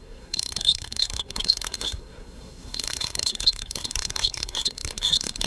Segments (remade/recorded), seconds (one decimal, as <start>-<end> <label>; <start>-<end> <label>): 0.0-5.5 remade